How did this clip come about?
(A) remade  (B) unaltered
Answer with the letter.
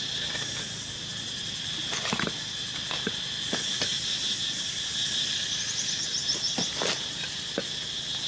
B